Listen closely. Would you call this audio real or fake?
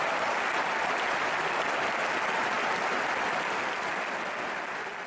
real